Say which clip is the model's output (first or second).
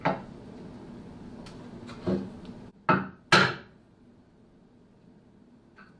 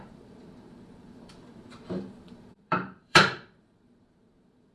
second